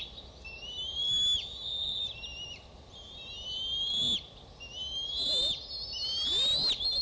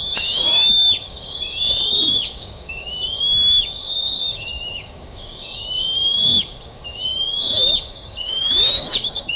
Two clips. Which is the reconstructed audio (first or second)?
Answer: second